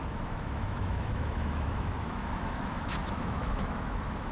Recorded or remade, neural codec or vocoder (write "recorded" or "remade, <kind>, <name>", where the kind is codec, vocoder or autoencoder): remade, autoencoder, DAC-VAE